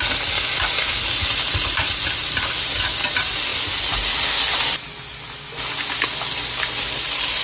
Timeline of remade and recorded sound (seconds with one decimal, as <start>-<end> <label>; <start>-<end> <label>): 0.0-7.4 recorded